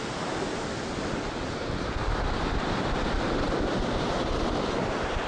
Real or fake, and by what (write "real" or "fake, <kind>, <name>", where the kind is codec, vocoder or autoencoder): real